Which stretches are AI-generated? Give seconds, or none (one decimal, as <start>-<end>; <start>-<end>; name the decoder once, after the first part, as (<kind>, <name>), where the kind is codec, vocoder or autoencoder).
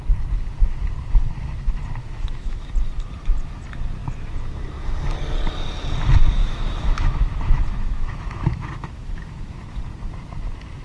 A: 2.0-2.7 (autoencoder, DAC-VAE); 6.4-9.8